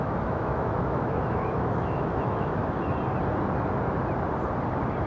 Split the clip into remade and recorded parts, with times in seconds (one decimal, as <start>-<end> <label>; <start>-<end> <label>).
0.0-2.6 remade; 2.6-5.1 recorded